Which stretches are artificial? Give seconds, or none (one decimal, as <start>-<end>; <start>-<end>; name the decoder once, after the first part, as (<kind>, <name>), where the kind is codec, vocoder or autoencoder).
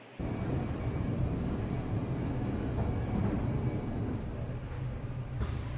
0.0-2.0 (vocoder, BigVGAN v2); 5.1-5.8